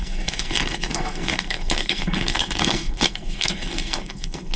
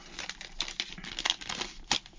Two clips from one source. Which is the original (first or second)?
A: second